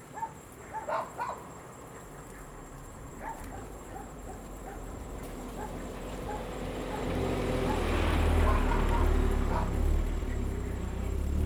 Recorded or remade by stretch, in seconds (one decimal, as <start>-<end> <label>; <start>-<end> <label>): 0.0-7.5 remade; 7.5-10.2 recorded; 10.2-11.5 remade